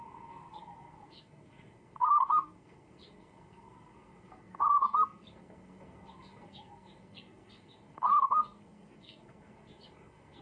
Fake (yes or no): yes